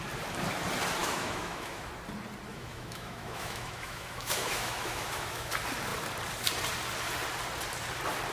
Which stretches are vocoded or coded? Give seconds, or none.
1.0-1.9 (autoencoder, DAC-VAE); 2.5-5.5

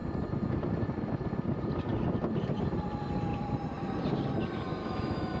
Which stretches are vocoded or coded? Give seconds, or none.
4.8-5.4 (autoencoder, DAC-VAE)

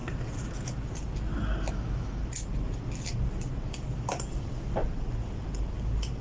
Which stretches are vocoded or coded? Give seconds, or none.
1.7-2.2 (autoencoder, DAC-VAE)

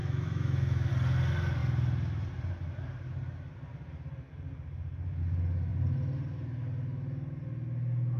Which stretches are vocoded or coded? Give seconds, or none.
0.0-0.9 (autoencoder, DAC-VAE)

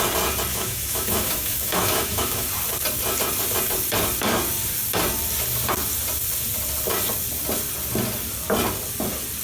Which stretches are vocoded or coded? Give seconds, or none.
0.5-2.5 (autoencoder, DAC-VAE)

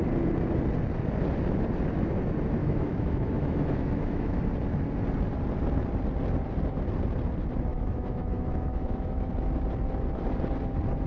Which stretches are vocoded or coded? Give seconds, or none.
2.6-4.4 (autoencoder, DAC-VAE); 7.7-9.3

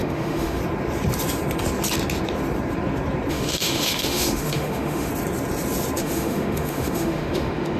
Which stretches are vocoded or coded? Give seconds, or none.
0.0-0.6 (autoencoder, DAC-VAE); 3.3-5.1; 6.0-7.8